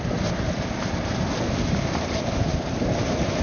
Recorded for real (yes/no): yes